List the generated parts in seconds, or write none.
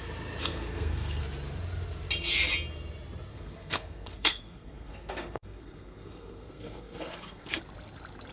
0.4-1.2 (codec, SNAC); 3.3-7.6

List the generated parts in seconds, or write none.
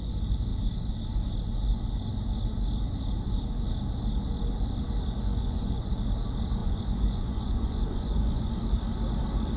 5.2-5.9 (vocoder, Vocos); 6.6-8.5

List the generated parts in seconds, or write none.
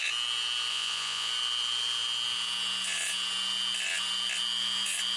0.7-1.3 (vocoder, Vocos)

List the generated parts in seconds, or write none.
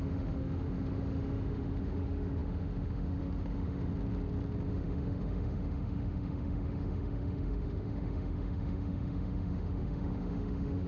0.0-3.9 (autoencoder, DAC-VAE); 4.7-10.9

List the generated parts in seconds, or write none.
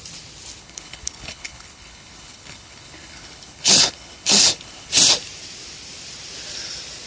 0.6-4.9 (codec, HILCodec)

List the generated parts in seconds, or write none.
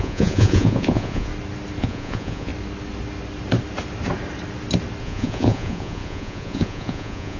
0.0-1.3 (vocoder, Vocos); 1.8-2.5; 5.0-7.4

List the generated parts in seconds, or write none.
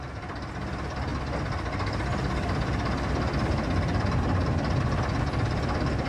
none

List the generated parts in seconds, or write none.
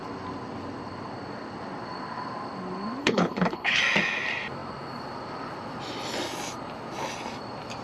3.0-3.8 (codec, HILCodec)